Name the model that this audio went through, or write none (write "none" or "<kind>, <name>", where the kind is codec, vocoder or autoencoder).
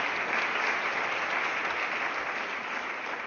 none